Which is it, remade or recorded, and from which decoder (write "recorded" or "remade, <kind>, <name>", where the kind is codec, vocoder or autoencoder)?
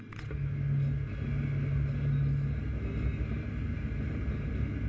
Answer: recorded